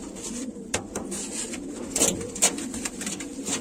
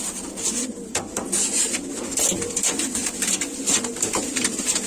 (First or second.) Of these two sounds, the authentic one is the second